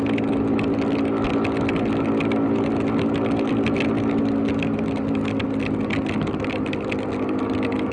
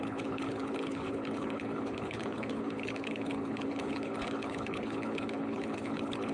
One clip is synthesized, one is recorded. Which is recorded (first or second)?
first